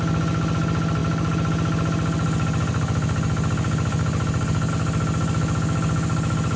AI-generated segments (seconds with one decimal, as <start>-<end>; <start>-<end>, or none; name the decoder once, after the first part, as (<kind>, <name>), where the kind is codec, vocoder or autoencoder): none